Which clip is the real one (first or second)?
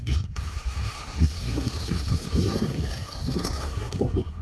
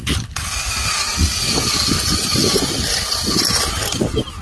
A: second